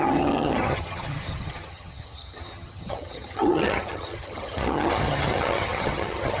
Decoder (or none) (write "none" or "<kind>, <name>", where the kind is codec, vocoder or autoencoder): vocoder, HiFi-GAN